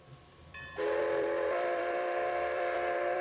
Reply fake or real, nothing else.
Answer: fake